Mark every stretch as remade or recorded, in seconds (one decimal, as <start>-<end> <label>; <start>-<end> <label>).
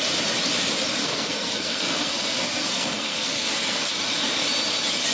0.0-1.0 recorded; 1.0-3.9 remade; 3.9-5.1 recorded